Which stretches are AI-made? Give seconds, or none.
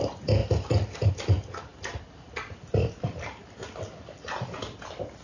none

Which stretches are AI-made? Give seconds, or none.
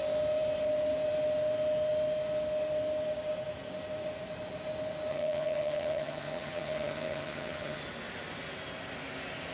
5.1-7.8